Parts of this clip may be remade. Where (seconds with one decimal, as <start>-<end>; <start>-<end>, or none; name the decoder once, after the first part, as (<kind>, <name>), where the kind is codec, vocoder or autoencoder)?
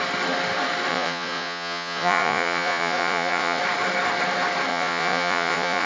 0.9-3.6 (vocoder, Vocos); 4.7-5.9